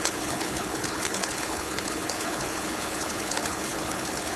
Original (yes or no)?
no